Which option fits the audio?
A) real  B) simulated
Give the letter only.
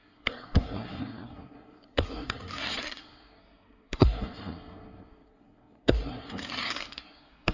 B